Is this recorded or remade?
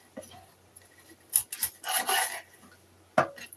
recorded